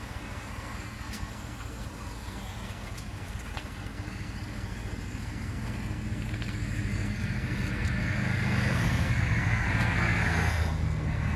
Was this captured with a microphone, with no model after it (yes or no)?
no